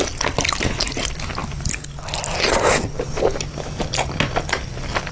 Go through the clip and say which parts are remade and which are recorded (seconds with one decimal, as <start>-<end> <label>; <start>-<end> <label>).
0.0-5.1 recorded